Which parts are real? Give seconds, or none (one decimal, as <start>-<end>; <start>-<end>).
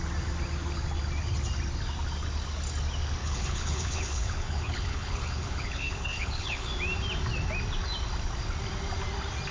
0.0-3.2; 6.7-9.5